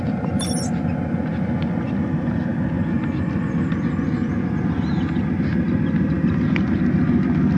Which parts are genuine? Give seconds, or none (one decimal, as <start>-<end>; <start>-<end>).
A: 0.0-7.6